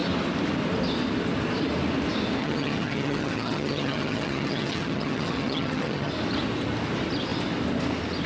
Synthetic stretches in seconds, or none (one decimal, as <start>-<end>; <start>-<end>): 2.4-6.1